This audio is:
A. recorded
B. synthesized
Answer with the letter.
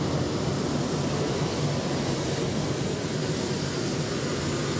A